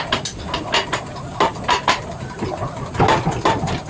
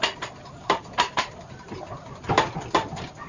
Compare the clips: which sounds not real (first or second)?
second